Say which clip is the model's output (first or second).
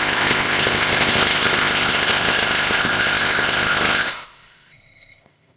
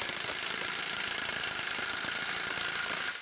first